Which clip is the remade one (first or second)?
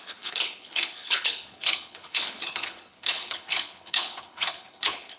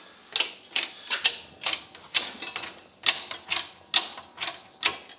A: first